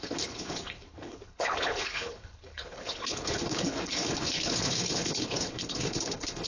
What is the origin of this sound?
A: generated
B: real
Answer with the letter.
A